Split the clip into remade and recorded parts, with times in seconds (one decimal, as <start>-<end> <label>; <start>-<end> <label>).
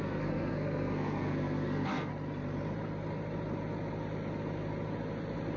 0.0-2.1 remade; 2.1-5.6 recorded